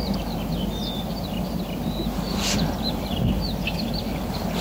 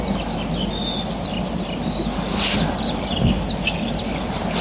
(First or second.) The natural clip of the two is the second